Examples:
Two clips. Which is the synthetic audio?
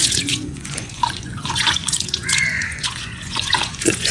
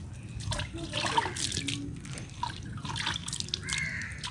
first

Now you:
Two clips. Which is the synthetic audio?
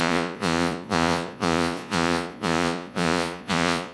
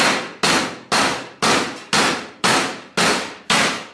first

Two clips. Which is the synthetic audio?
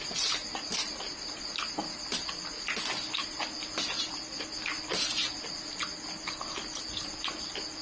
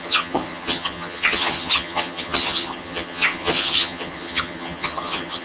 second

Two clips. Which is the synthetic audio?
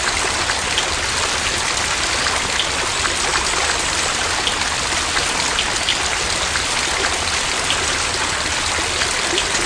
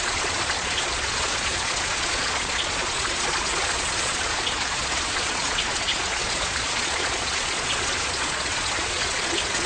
second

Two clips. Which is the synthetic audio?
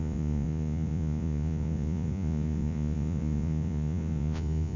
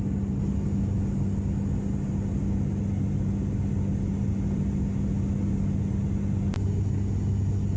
first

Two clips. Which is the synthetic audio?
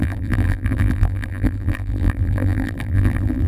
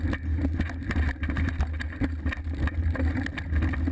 first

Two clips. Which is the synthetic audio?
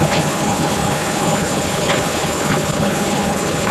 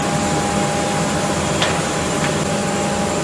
first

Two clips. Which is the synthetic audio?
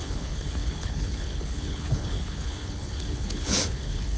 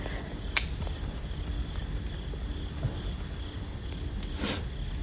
first